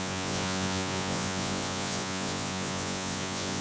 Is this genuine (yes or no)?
no